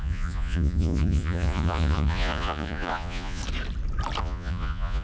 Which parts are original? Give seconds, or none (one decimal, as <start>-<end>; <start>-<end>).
3.4-4.2